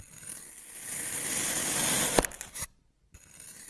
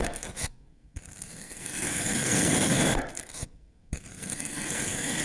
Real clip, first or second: first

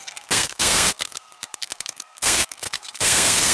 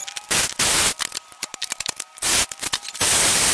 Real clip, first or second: second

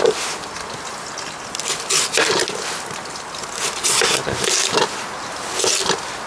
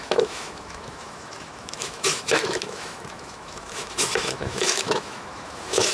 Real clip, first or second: first